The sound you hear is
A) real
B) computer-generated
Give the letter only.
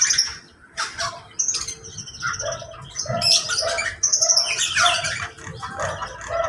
A